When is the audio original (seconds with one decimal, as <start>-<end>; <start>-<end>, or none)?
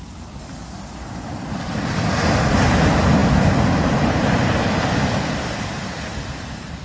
0.0-6.8